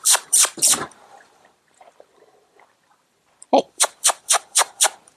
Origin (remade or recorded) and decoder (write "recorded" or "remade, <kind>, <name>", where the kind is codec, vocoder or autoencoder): remade, vocoder, BigVGAN v2